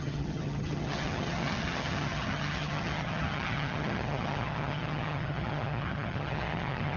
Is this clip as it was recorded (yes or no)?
no